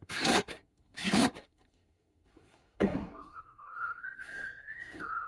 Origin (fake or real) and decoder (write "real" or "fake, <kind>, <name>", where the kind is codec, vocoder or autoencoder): fake, codec, SNAC